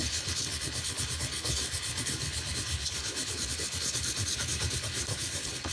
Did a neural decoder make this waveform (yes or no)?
yes